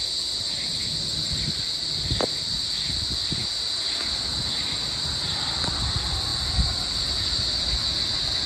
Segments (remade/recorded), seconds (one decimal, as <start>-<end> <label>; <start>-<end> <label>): 0.0-3.4 remade; 3.4-5.4 recorded; 5.4-8.5 remade

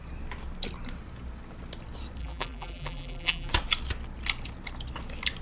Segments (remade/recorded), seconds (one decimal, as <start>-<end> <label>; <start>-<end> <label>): 0.0-2.2 recorded; 2.2-3.5 remade; 3.5-5.4 recorded

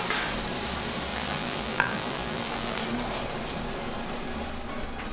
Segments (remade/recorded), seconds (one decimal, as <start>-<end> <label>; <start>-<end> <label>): 0.0-1.1 recorded; 1.1-2.8 remade; 2.8-5.1 recorded